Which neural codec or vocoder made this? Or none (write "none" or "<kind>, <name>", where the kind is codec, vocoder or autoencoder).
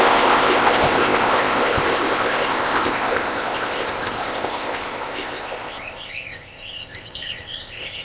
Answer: codec, ZipCodec